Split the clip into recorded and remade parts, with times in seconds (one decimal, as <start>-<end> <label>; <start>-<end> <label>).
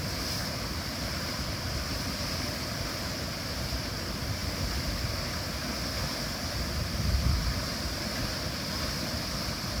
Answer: 0.0-0.4 recorded; 0.4-2.5 remade; 2.5-9.8 recorded